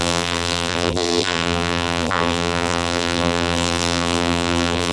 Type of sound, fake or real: fake